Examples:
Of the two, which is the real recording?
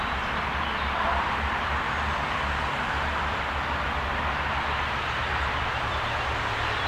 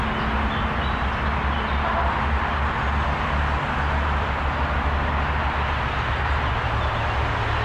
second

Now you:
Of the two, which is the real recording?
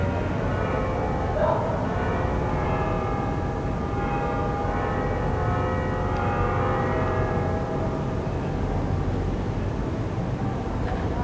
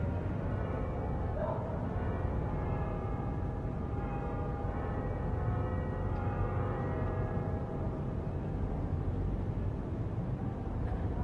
first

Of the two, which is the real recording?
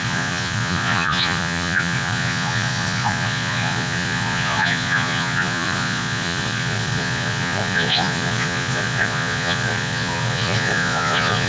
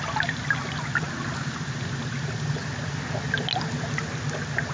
second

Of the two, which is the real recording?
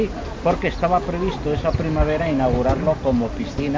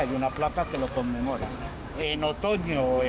first